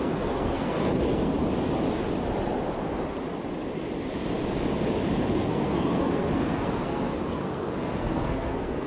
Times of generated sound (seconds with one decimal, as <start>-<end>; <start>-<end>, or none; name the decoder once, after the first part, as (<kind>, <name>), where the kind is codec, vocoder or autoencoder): 0.0-1.3 (codec, SNAC); 5.3-8.9